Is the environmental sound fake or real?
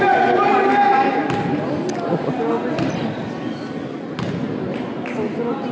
real